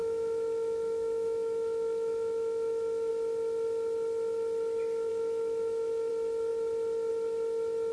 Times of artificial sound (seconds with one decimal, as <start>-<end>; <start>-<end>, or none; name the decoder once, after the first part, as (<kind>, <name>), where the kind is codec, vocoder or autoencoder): 0.0-3.1 (autoencoder, DAC-VAE); 5.1-6.1